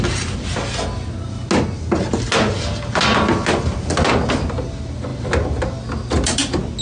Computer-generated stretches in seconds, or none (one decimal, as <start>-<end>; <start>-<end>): none